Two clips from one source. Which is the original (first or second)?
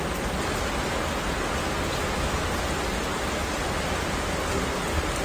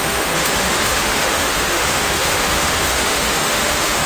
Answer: first